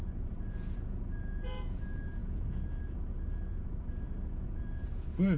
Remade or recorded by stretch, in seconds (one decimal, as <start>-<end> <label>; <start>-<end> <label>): 0.0-5.4 remade